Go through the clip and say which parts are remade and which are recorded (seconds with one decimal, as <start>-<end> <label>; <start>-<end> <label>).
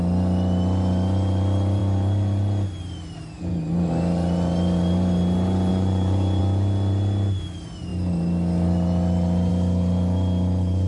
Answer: 0.0-5.7 recorded; 5.7-6.4 remade; 6.4-10.9 recorded